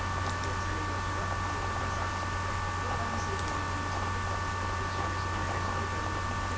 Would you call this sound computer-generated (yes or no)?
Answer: no